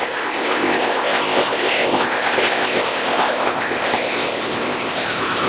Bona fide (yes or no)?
no